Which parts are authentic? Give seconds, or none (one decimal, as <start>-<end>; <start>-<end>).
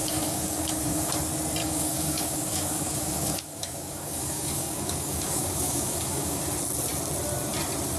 1.1-1.6; 6.4-8.0